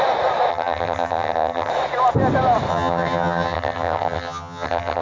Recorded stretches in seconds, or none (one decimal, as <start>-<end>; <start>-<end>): 0.0-0.5; 1.7-2.7